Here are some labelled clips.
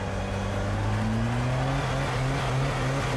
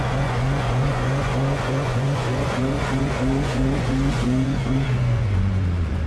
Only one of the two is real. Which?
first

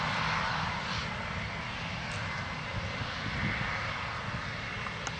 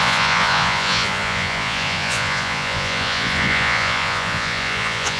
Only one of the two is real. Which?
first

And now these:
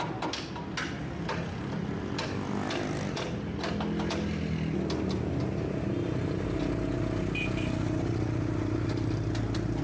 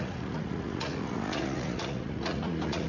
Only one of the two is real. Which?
first